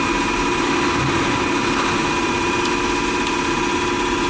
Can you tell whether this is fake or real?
real